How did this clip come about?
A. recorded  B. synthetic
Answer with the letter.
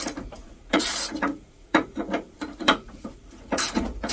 B